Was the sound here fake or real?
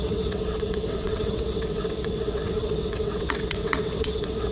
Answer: fake